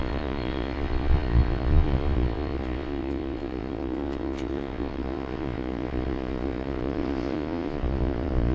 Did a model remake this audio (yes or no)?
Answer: yes